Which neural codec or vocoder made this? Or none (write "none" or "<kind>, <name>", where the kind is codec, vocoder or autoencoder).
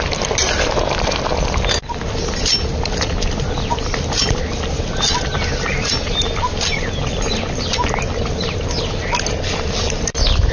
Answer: none